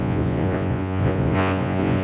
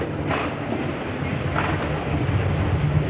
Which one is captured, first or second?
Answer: second